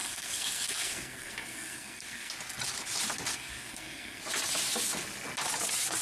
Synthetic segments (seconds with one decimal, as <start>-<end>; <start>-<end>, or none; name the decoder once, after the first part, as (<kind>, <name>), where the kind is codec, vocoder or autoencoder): 0.0-2.3 (codec, SNAC); 3.3-4.2